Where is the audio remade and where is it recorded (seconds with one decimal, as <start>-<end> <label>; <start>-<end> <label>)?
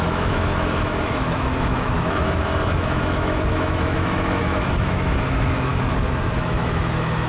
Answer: 0.0-5.7 remade; 5.7-6.3 recorded; 6.3-7.3 remade